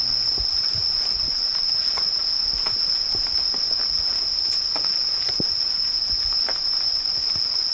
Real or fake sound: real